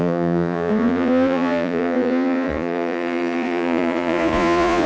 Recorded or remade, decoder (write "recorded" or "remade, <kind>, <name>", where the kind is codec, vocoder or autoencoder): remade, vocoder, Vocos